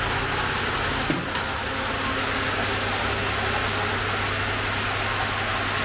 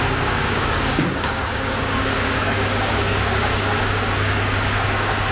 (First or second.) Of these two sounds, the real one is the first